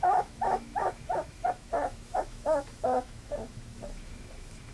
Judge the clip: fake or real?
fake